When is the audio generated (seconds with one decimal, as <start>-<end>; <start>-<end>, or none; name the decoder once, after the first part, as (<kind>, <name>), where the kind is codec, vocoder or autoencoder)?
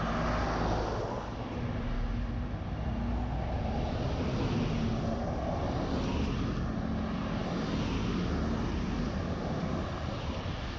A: none